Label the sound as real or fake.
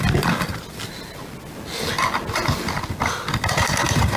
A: real